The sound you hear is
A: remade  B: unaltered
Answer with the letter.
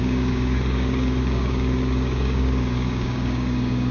A